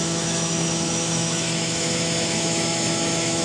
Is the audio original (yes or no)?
no